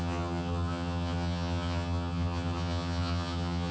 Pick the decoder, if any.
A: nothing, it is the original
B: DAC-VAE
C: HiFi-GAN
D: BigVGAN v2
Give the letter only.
C